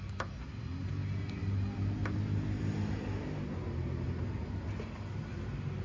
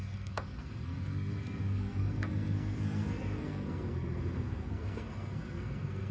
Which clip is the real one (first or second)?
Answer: first